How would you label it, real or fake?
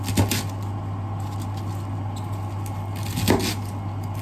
real